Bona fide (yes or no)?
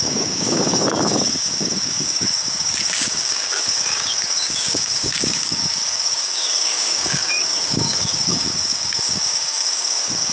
no